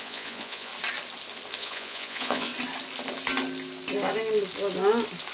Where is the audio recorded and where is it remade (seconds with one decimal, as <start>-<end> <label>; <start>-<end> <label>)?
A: 0.0-0.7 remade; 0.7-1.6 recorded; 1.6-2.5 remade; 2.5-5.3 recorded